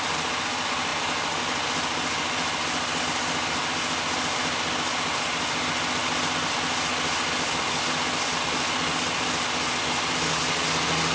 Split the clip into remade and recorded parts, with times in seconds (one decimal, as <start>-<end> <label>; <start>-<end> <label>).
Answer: 0.0-11.1 recorded